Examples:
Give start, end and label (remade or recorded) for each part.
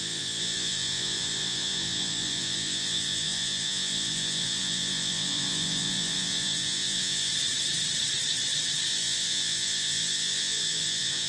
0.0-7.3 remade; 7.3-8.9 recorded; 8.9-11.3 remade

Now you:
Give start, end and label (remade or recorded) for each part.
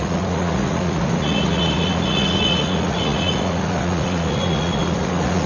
0.0-5.5 remade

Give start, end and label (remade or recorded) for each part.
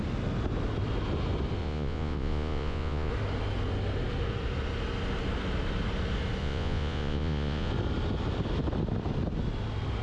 0.0-1.6 recorded; 1.6-3.1 remade; 3.1-6.4 recorded; 6.4-7.7 remade; 7.7-10.0 recorded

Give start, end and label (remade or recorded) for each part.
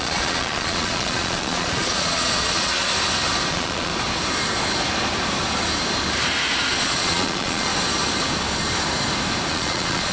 0.0-2.9 remade; 2.9-3.5 recorded; 3.5-3.9 remade; 3.9-6.8 recorded; 6.8-7.7 remade; 7.7-9.5 recorded; 9.5-10.1 remade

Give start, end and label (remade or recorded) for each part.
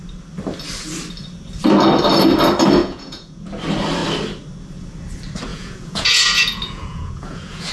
0.0-2.8 recorded; 2.8-3.5 remade; 3.5-5.5 recorded; 5.5-7.7 remade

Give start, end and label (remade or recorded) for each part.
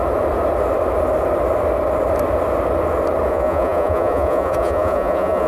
0.0-3.3 recorded; 3.3-5.5 remade